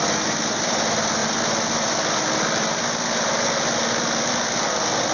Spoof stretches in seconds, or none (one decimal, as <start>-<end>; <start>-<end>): none